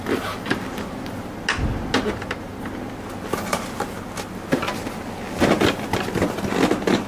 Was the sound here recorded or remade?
recorded